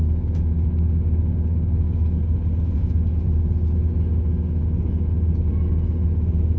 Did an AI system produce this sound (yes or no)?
no